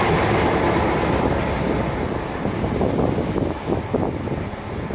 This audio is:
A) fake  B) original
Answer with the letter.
B